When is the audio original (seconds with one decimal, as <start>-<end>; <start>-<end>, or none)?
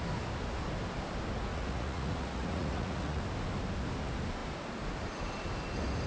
0.0-1.5; 3.2-6.1